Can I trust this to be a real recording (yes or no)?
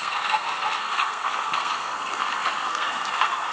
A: no